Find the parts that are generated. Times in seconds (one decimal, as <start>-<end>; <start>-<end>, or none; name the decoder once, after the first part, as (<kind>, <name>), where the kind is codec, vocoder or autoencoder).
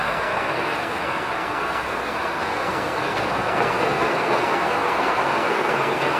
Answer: 0.0-6.2 (codec, SNAC)